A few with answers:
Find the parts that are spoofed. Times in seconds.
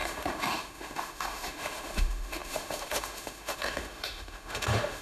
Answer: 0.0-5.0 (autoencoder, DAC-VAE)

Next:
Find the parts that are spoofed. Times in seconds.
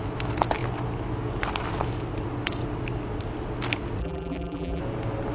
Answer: 4.0-4.8 (vocoder, BigVGAN v2)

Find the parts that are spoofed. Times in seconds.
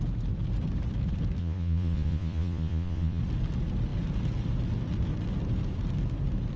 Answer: 1.4-3.2 (vocoder, Vocos)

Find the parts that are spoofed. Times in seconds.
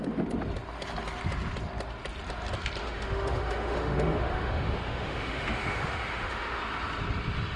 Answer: 2.8-6.6 (autoencoder, DAC-VAE)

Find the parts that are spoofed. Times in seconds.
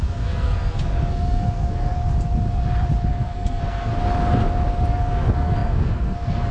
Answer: 0.0-2.0 (codec, SNAC); 3.1-3.9; 4.9-6.5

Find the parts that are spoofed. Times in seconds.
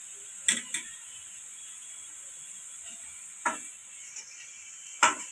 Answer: none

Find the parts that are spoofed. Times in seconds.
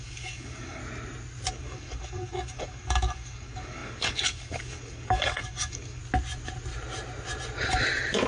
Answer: 0.0-0.8 (codec, DAC); 1.5-6.0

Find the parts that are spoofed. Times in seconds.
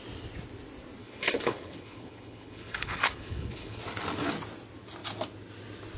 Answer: 1.0-3.8 (codec, HILCodec)